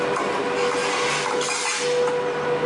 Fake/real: real